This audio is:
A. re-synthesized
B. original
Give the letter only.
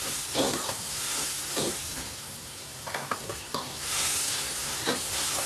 A